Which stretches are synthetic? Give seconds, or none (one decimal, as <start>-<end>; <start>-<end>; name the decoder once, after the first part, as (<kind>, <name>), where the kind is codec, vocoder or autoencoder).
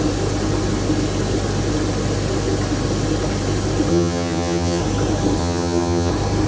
3.9-4.8 (vocoder, HiFi-GAN); 5.4-6.1